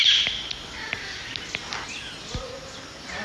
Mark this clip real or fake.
real